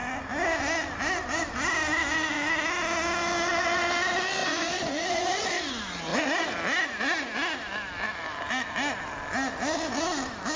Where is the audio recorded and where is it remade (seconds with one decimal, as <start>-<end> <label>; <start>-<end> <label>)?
0.0-4.4 recorded; 4.4-5.6 remade; 5.6-10.6 recorded